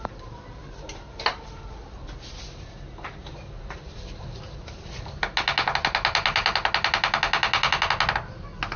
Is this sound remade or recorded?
recorded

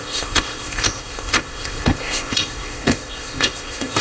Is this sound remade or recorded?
remade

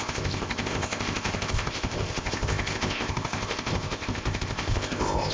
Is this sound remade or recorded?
remade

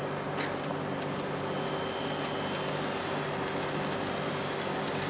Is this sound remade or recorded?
recorded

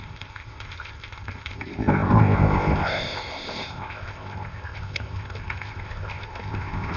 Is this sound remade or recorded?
remade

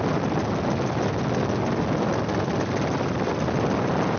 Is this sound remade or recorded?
recorded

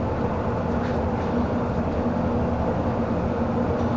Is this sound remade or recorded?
recorded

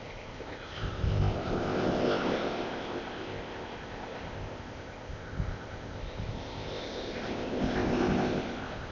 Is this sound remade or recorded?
remade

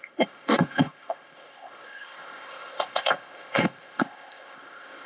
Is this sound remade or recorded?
remade